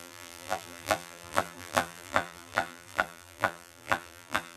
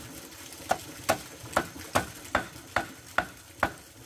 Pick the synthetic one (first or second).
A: first